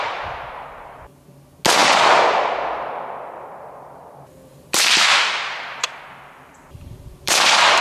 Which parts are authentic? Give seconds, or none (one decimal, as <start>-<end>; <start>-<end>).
0.0-4.5